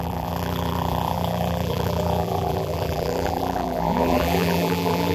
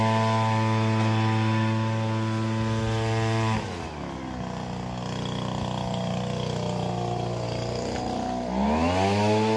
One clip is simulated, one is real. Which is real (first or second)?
second